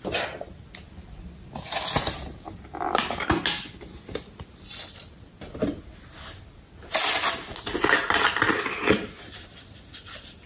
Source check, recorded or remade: recorded